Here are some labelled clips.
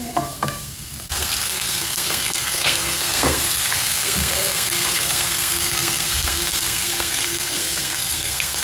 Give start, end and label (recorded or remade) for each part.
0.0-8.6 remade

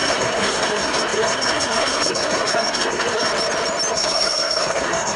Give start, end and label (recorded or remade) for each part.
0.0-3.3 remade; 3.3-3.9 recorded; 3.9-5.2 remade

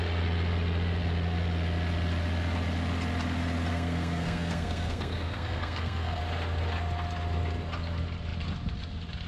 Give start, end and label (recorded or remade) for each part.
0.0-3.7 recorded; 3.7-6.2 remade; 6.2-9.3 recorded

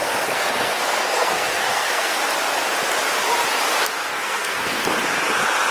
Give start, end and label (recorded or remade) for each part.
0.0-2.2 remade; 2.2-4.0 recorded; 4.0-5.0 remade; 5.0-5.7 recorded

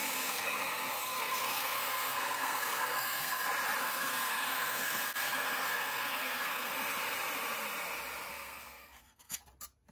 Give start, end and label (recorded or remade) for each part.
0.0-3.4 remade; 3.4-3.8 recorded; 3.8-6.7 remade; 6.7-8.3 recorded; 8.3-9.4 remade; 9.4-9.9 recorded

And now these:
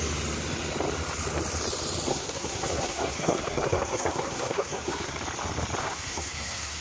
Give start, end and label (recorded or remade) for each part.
0.0-2.1 recorded; 2.1-5.2 remade; 5.2-5.8 recorded; 5.8-6.8 remade